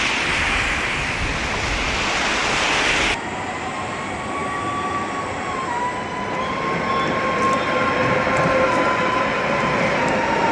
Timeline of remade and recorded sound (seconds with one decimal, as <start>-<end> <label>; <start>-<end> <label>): 0.0-10.5 recorded